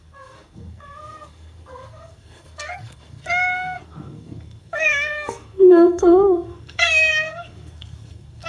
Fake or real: fake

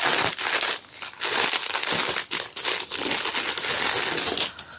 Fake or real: real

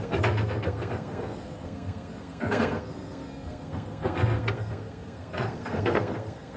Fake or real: fake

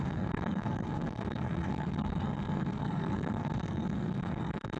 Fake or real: fake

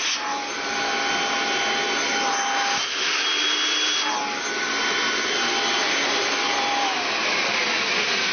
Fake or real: real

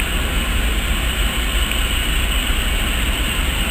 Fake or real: real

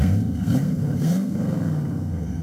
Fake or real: fake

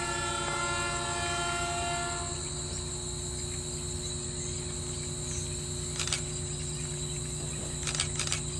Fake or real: real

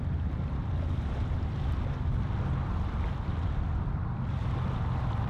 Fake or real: real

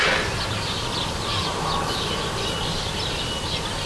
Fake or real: real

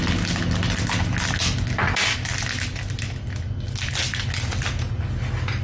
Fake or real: real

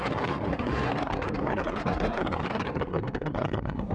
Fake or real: fake